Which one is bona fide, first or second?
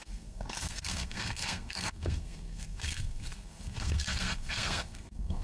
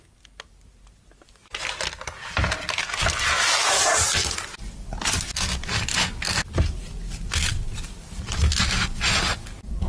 second